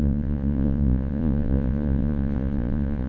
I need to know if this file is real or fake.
fake